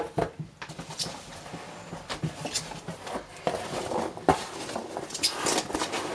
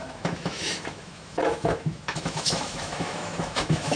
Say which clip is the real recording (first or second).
first